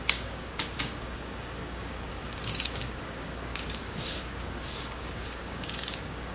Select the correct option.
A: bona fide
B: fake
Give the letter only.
B